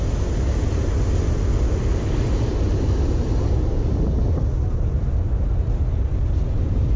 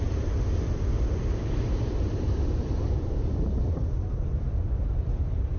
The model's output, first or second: second